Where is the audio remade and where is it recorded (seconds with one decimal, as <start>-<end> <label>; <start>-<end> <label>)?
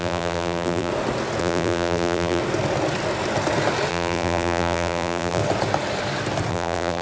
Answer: 0.0-0.9 remade; 0.9-1.4 recorded; 1.4-2.4 remade; 2.4-3.9 recorded; 3.9-5.4 remade; 5.4-6.5 recorded; 6.5-7.0 remade